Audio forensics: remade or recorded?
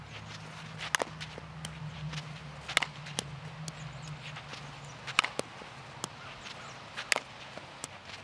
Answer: recorded